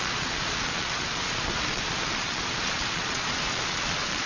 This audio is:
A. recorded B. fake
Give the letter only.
B